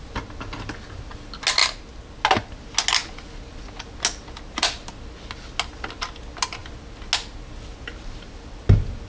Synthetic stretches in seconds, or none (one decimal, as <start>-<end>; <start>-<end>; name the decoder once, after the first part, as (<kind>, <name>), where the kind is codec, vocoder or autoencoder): none

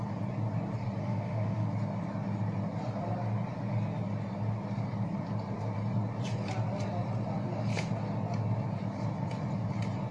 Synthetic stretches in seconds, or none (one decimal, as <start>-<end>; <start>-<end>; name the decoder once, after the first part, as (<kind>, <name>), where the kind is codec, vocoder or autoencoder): 1.0-1.7 (autoencoder, DAC-VAE)

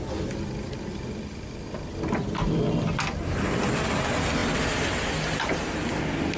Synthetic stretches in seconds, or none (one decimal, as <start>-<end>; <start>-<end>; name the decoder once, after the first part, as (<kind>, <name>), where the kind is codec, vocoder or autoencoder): none

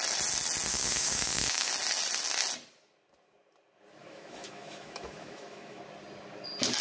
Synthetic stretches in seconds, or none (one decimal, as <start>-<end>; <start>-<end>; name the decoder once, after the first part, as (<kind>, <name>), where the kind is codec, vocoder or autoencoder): 0.7-1.7 (autoencoder, DAC-VAE); 4.0-5.8

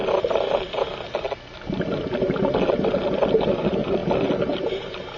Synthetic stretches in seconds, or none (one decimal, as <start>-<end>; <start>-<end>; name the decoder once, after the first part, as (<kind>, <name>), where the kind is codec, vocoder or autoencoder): 0.0-1.1 (vocoder, BigVGAN v2); 4.0-4.7

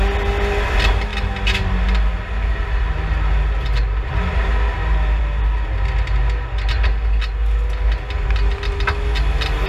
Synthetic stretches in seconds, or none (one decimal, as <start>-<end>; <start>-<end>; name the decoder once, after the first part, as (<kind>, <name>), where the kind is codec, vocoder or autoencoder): none

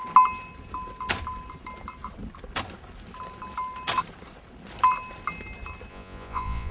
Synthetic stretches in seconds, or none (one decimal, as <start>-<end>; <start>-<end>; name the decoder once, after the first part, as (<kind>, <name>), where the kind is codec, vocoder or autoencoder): 5.9-6.7 (vocoder, Vocos)

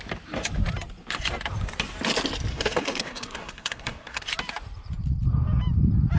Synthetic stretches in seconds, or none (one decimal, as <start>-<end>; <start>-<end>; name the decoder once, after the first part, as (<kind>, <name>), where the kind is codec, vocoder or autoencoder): 2.5-4.2 (codec, SNAC)